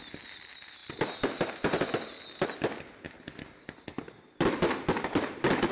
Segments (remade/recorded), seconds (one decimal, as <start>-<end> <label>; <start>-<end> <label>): 0.0-5.7 recorded